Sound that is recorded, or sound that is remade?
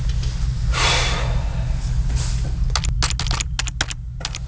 recorded